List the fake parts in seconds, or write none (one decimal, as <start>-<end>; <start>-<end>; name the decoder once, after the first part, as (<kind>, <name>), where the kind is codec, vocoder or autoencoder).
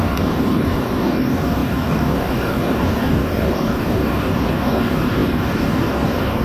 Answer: 0.0-6.4 (codec, DAC)